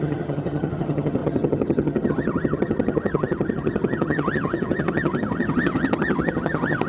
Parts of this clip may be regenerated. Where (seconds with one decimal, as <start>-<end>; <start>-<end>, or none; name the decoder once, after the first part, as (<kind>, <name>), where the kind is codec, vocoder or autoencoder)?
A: 0.0-6.9 (vocoder, HiFi-GAN)